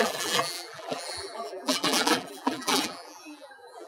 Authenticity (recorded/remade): remade